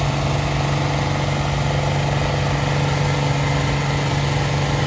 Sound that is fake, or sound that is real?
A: real